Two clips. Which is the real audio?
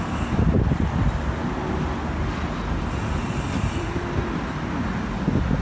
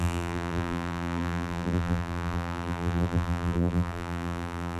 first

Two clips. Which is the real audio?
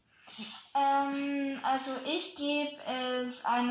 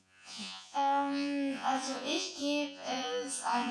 first